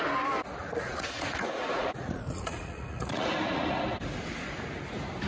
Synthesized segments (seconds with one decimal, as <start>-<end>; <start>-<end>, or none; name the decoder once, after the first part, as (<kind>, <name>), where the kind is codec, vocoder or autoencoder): 0.6-3.8 (vocoder, Vocos)